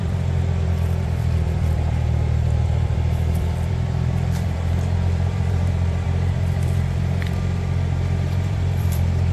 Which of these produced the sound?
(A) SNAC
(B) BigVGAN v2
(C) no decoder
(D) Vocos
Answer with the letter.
B